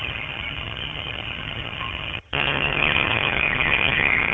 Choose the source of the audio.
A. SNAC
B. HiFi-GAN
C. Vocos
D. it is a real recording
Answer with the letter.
B